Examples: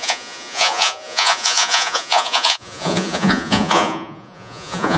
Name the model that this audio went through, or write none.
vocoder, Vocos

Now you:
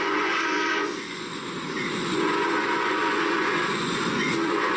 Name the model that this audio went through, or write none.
vocoder, Vocos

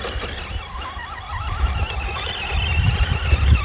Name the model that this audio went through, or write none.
none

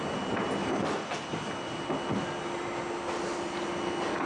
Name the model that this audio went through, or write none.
none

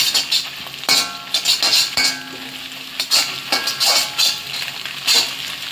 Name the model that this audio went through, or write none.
none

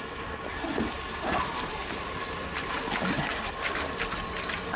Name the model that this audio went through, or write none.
none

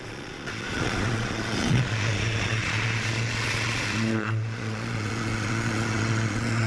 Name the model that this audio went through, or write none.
vocoder, Vocos